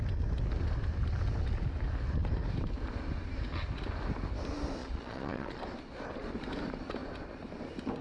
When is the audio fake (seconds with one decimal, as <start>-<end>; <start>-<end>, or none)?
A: 4.8-5.6